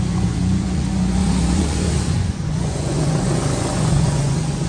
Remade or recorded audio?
remade